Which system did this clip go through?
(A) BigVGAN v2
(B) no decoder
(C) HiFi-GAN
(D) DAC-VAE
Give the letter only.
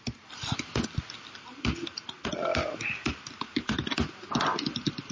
B